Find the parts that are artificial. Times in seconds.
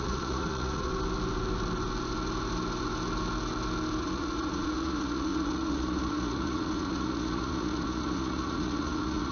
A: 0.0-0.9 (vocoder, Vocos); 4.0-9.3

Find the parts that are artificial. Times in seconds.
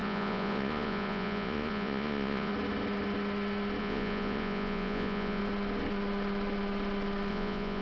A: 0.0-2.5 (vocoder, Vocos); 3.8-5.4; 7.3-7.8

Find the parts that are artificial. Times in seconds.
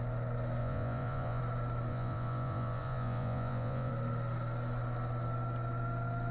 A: 0.6-1.4 (vocoder, Vocos); 1.9-3.9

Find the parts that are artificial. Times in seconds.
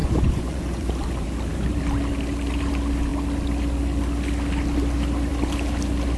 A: 0.0-0.9 (vocoder, Vocos)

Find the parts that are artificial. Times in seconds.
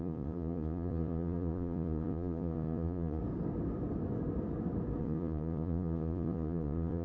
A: 0.0-3.2 (vocoder, Vocos); 5.0-7.0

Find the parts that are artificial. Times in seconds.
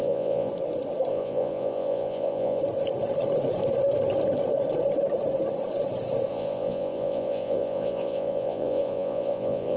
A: 0.0-0.5 (vocoder, Vocos); 1.1-2.6; 6.3-9.8